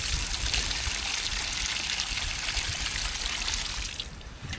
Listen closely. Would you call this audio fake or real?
real